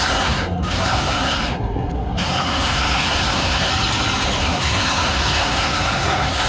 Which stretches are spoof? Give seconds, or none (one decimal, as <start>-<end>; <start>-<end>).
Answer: 0.0-3.7; 4.4-6.5